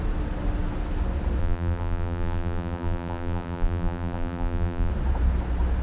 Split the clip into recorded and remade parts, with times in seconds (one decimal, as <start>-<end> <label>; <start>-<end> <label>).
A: 0.0-1.4 recorded; 1.4-4.9 remade; 4.9-5.8 recorded